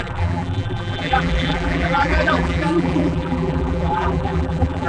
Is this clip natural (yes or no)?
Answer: no